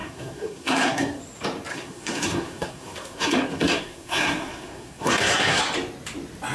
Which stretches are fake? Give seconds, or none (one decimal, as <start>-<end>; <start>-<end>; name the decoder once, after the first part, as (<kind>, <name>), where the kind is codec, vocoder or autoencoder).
0.0-1.2 (codec, SNAC); 1.7-5.6